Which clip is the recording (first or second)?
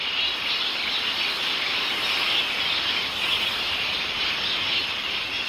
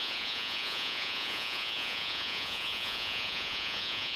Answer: first